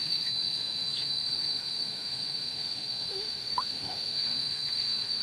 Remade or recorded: remade